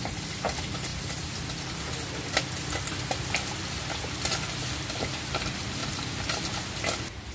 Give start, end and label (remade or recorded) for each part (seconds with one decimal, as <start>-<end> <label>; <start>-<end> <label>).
0.0-7.3 recorded